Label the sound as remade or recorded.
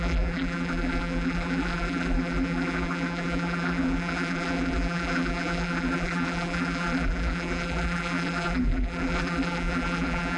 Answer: remade